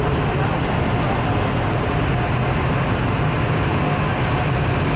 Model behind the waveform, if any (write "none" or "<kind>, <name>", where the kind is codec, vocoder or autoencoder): none